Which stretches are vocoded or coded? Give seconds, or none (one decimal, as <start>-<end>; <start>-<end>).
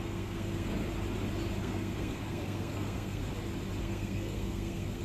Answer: 0.0-0.7; 1.6-3.2; 3.8-5.0